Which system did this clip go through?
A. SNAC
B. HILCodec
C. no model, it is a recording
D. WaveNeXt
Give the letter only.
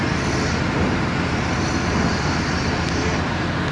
C